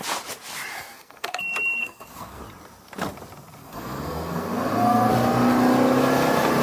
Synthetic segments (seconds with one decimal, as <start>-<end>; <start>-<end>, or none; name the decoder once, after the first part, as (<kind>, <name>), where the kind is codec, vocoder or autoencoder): 0.7-1.4 (codec, SNAC); 1.8-2.4; 3.6-5.1